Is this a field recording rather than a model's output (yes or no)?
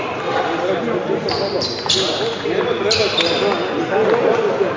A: yes